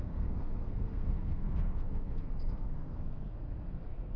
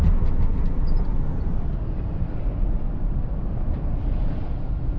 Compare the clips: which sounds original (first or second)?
second